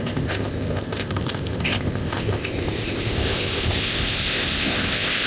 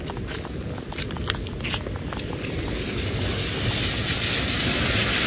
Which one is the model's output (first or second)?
first